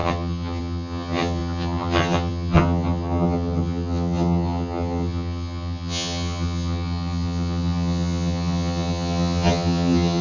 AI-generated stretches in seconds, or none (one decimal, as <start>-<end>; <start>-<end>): 0.0-10.2